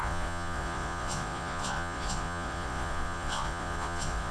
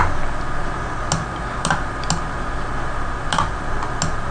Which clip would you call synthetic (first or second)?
first